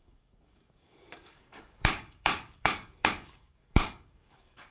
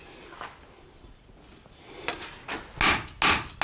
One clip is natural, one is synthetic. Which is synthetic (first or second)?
first